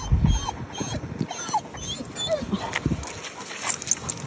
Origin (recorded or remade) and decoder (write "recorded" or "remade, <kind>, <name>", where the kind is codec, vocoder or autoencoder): recorded